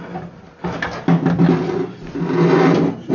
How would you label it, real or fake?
real